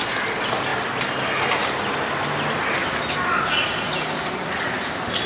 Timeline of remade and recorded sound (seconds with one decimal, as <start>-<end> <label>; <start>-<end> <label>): 0.0-5.3 recorded